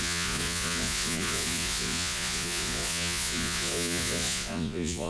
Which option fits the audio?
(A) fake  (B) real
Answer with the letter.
A